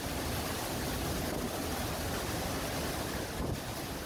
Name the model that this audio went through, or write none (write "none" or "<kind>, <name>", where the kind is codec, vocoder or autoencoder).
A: none